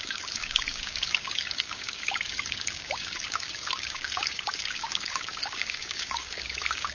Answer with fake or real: fake